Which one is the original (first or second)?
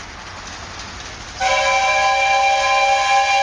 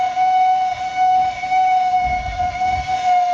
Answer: first